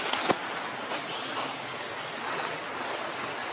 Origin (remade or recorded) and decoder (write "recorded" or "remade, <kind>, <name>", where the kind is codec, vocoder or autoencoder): recorded